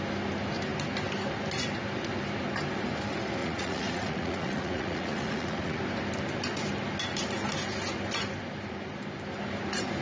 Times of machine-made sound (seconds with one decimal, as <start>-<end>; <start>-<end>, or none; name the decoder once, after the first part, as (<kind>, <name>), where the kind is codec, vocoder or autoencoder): 3.4-5.8 (vocoder, Vocos)